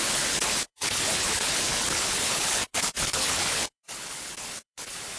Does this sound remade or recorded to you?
remade